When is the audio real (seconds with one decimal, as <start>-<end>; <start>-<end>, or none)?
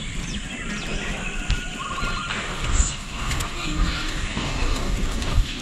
0.0-2.3